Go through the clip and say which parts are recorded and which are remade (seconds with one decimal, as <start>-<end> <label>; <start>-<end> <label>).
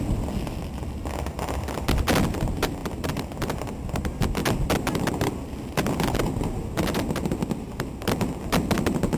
0.0-9.2 recorded